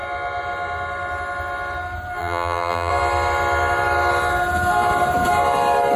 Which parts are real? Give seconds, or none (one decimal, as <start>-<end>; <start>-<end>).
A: 0.0-2.2; 2.9-6.0